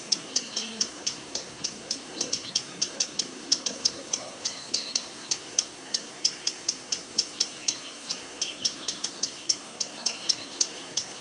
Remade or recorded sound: remade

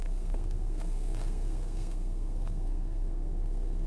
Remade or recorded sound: remade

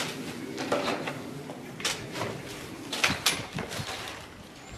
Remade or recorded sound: recorded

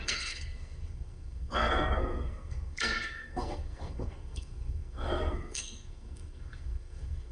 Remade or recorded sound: remade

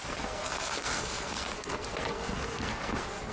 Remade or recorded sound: remade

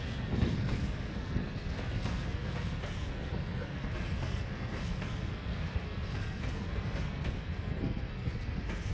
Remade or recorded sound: remade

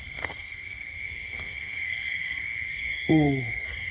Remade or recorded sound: remade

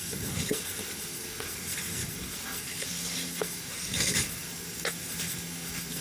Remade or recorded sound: remade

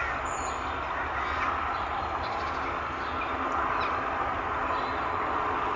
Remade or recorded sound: recorded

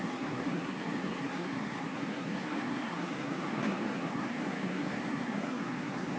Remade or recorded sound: remade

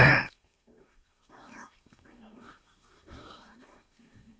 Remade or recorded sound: remade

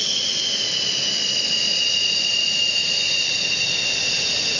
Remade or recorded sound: recorded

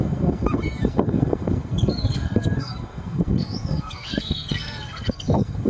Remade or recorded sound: remade